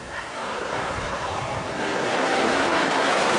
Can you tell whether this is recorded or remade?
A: remade